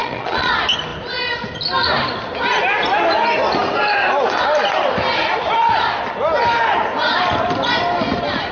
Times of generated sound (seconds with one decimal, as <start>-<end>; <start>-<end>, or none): 0.0-0.5